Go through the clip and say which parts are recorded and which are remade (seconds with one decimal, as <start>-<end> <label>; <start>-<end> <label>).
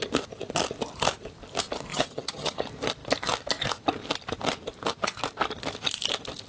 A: 0.0-1.9 recorded; 1.9-2.6 remade; 2.6-6.5 recorded